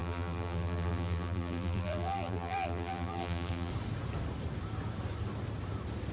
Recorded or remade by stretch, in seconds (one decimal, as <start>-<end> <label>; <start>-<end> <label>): 0.0-3.7 remade; 3.7-6.1 recorded